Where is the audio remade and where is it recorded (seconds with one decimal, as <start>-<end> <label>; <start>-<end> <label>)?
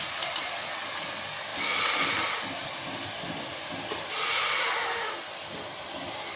0.0-6.4 recorded